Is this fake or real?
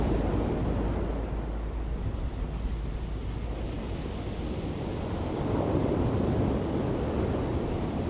real